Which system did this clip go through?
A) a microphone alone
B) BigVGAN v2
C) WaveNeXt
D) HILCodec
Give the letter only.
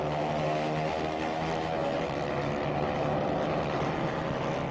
A